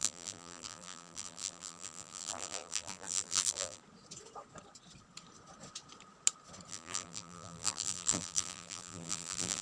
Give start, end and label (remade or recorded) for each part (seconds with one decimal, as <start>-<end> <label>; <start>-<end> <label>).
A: 0.0-3.8 remade; 3.8-6.7 recorded; 6.7-9.6 remade